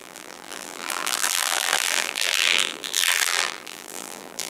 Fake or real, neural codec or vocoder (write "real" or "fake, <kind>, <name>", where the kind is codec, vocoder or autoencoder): fake, vocoder, BigVGAN v2